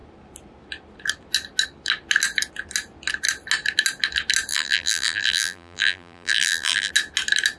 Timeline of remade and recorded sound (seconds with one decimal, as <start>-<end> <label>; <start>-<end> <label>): 0.0-4.5 recorded; 4.5-6.9 remade; 6.9-7.6 recorded